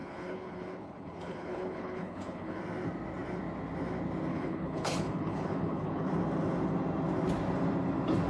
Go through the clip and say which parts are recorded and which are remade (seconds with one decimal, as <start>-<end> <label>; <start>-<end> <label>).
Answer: 0.0-2.6 remade; 2.6-4.3 recorded; 4.3-6.1 remade; 6.1-8.3 recorded